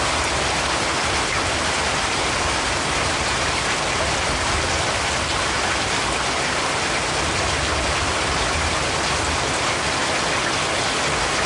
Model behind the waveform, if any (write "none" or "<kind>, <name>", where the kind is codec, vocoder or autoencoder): none